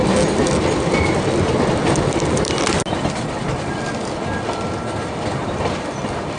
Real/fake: real